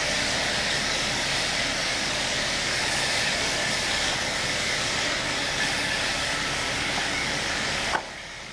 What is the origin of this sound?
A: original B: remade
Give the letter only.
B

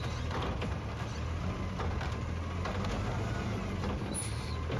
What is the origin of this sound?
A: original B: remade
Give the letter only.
A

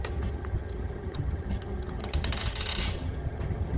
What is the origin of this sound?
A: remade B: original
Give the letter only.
A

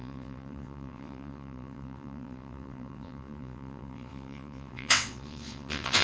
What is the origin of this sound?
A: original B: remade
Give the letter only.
B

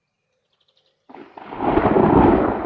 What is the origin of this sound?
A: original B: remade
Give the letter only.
A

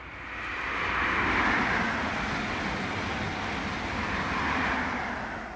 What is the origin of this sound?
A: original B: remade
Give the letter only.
A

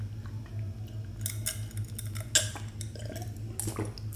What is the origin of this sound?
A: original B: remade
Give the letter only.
A